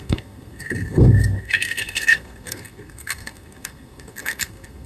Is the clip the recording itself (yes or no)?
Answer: no